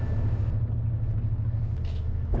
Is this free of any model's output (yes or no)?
yes